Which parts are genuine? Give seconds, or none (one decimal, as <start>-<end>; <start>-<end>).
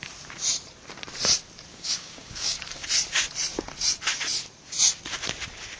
0.0-1.7; 2.9-5.8